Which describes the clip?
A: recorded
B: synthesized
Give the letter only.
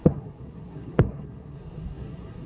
B